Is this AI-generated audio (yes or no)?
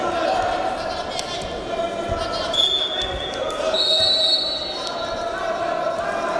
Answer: no